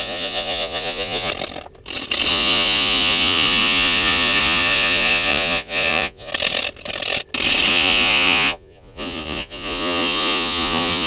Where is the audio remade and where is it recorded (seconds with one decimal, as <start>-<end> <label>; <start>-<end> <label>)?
0.0-1.3 remade; 1.3-2.3 recorded; 2.3-6.3 remade; 6.3-7.7 recorded; 7.7-11.1 remade